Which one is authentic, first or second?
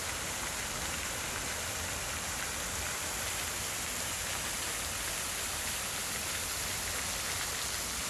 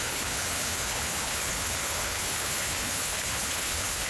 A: first